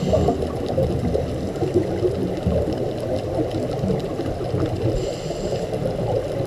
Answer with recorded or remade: recorded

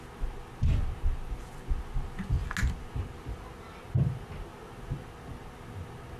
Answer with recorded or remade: recorded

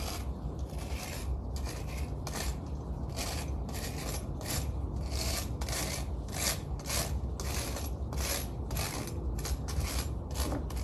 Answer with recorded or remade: recorded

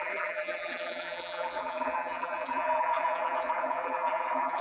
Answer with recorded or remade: remade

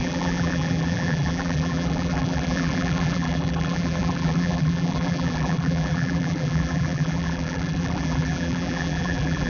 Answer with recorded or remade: remade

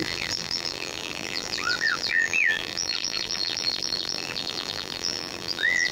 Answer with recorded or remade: remade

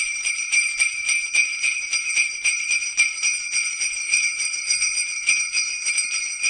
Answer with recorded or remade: remade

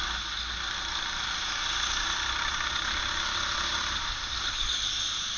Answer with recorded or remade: recorded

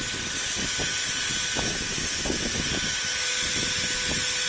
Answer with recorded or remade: recorded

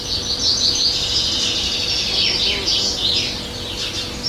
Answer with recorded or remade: recorded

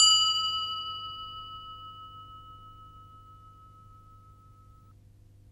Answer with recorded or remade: recorded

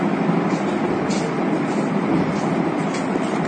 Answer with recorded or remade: remade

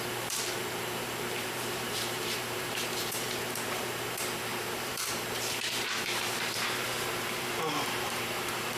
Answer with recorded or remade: remade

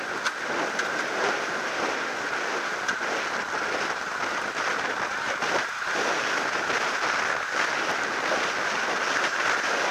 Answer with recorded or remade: recorded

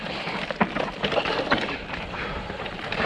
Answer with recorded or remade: remade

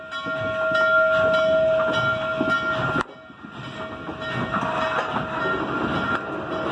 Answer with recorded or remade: recorded